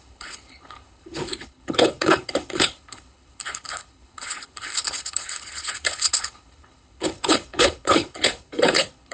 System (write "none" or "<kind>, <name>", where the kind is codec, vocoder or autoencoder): codec, HILCodec